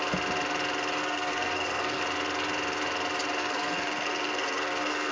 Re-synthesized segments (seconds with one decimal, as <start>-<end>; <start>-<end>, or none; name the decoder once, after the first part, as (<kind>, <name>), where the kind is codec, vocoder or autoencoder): 1.0-2.0 (codec, SNAC); 3.4-5.1